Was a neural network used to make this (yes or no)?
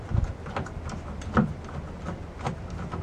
no